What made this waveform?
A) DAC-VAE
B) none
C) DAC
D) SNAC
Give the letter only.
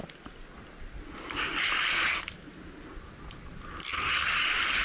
B